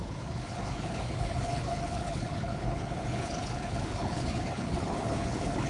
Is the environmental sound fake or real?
fake